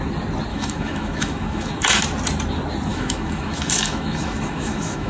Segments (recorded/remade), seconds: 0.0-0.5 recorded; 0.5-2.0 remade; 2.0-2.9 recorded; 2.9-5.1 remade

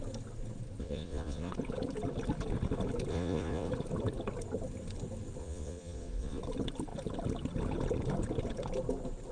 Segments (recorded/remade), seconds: 0.0-0.8 recorded; 0.8-1.5 remade; 1.5-3.1 recorded; 3.1-3.7 remade; 3.7-5.4 recorded; 5.4-6.4 remade; 6.4-9.3 recorded

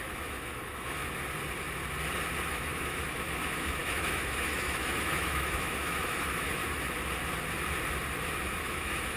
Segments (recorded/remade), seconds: 0.0-1.0 remade; 1.0-2.5 recorded; 2.5-6.6 remade; 6.6-8.5 recorded; 8.5-9.2 remade

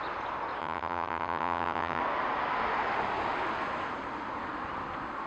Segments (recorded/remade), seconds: 0.0-0.6 recorded; 0.6-2.0 remade; 2.0-5.3 recorded